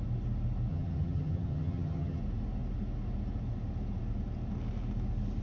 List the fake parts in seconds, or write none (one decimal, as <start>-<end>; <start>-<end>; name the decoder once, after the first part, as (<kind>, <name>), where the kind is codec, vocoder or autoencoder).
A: 0.7-2.2 (vocoder, HiFi-GAN)